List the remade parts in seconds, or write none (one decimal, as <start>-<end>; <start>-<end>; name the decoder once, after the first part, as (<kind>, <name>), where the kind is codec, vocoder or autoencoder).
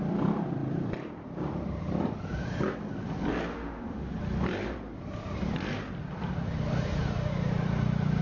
3.5-4.1 (autoencoder, DAC-VAE)